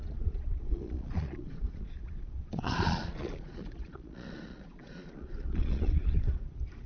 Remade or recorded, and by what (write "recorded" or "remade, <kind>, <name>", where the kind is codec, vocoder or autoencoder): remade, vocoder, Vocos